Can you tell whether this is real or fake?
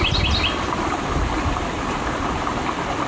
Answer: real